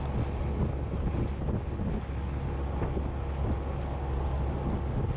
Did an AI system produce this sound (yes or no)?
no